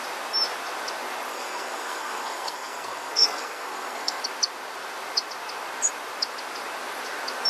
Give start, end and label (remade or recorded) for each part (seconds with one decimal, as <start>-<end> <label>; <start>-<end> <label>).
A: 0.0-1.3 recorded; 1.3-4.2 remade; 4.2-7.5 recorded